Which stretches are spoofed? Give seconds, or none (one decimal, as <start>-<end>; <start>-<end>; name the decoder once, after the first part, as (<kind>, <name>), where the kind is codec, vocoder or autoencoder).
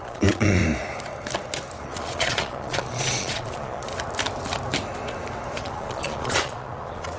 0.0-0.6 (vocoder, Vocos); 1.8-3.9; 5.6-7.2